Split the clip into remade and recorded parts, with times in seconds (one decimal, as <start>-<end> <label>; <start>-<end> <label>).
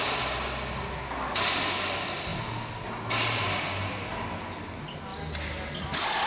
0.0-5.1 recorded; 5.1-6.3 remade